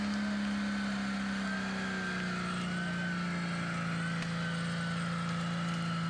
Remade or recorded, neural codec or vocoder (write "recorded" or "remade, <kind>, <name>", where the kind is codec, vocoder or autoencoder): recorded